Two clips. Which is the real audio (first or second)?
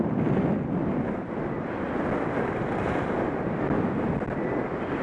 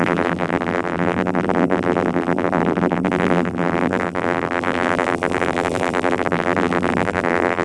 first